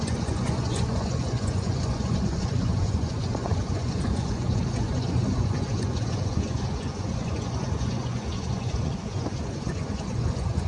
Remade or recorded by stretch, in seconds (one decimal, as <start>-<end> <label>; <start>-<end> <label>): 0.0-10.7 remade